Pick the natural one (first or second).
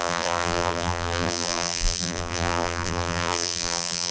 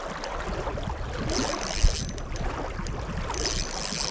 second